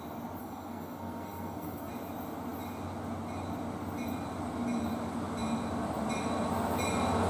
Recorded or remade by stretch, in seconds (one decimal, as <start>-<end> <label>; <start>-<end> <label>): 0.0-0.4 recorded; 0.4-1.9 remade; 1.9-7.3 recorded